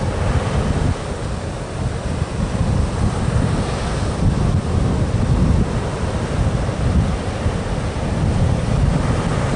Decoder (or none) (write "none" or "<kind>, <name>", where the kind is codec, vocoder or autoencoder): none